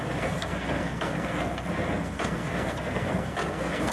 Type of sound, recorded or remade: remade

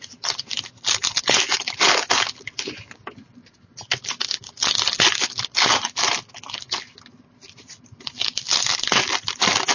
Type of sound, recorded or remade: recorded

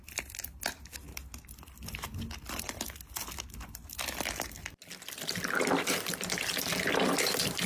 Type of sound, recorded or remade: recorded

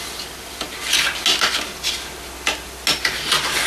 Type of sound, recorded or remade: recorded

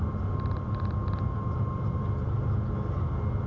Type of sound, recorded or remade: recorded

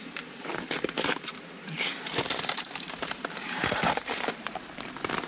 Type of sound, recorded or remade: remade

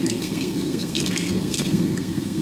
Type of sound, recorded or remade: remade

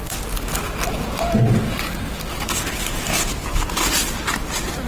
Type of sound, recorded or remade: recorded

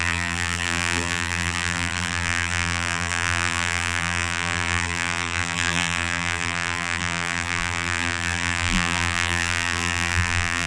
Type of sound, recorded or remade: remade